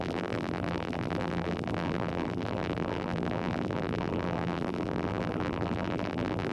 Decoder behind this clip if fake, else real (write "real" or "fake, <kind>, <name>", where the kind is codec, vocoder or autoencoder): fake, vocoder, BigVGAN v2